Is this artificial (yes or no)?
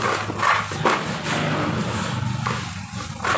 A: no